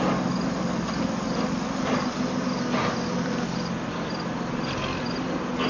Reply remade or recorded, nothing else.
recorded